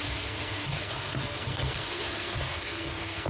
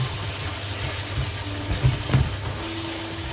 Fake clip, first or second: first